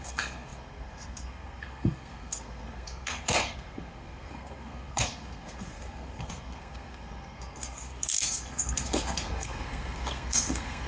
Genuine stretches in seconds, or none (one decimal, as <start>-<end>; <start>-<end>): none